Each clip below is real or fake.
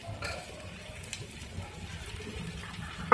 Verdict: real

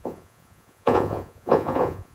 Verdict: fake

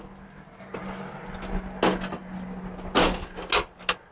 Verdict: real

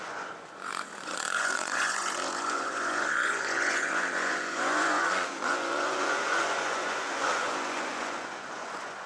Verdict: fake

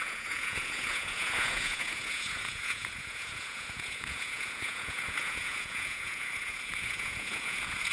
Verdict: fake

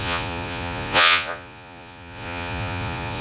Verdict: fake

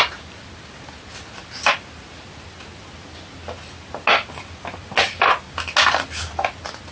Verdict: real